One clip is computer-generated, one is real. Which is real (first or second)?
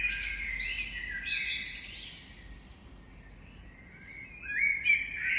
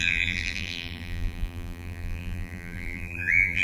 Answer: first